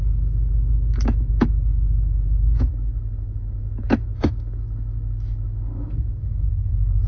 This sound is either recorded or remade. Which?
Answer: remade